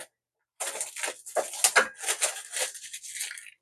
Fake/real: real